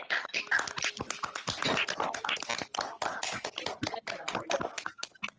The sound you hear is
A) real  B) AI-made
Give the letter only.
A